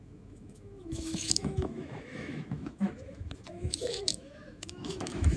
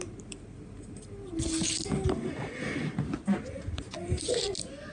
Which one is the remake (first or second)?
first